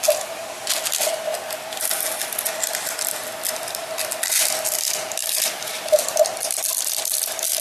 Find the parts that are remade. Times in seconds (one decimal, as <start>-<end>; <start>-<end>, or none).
none